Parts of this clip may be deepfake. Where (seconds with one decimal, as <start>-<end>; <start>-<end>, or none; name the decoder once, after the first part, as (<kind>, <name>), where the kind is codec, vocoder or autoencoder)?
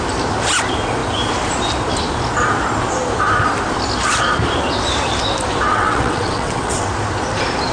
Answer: 5.7-6.9 (vocoder, WaveNeXt)